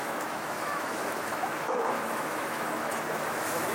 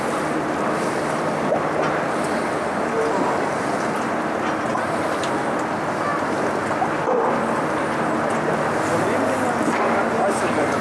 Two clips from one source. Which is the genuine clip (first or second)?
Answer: second